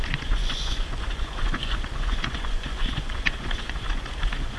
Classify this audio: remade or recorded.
remade